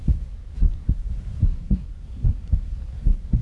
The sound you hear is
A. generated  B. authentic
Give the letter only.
A